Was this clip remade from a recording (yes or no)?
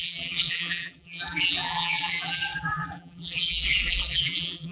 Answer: yes